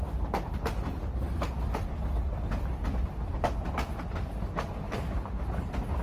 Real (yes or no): yes